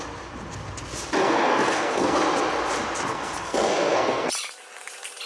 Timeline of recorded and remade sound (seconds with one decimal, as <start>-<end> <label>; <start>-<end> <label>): 0.0-1.2 recorded; 1.2-2.2 remade; 2.2-3.1 recorded; 3.1-4.3 remade; 4.3-5.3 recorded